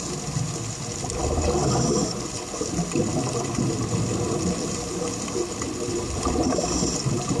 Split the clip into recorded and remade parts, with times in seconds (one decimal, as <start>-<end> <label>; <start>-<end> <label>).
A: 0.0-7.4 recorded